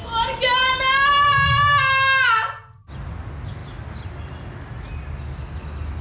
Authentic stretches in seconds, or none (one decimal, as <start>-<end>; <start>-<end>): 0.0-6.0